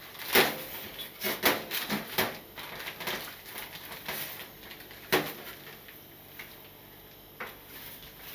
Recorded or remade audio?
recorded